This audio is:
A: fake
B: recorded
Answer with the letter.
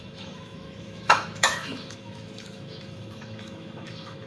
A